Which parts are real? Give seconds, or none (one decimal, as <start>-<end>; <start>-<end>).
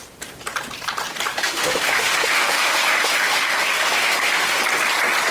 0.0-1.4; 4.6-5.3